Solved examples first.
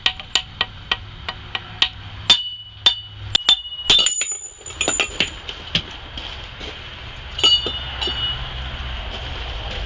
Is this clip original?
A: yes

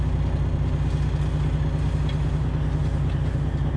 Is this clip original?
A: yes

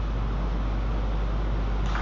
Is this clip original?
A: yes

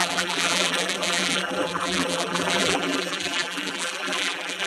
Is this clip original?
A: no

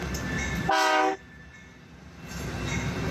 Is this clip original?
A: yes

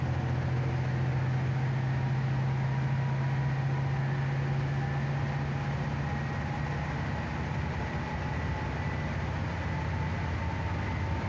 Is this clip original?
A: yes